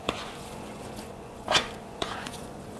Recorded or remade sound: remade